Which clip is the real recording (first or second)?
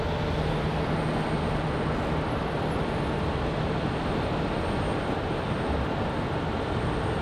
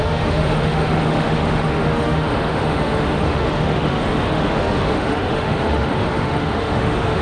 first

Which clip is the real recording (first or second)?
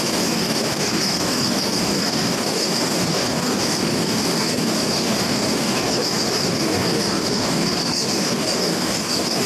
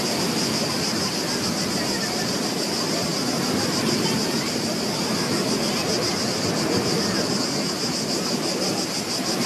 second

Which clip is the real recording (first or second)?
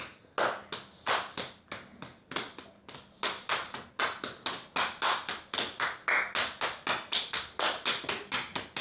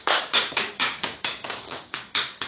first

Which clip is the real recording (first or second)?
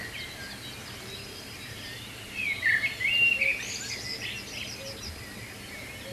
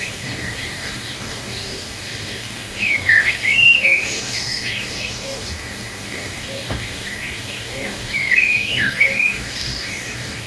first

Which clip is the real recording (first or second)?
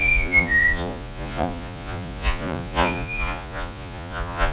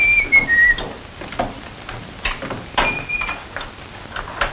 second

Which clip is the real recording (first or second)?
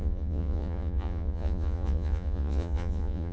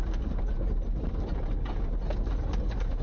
second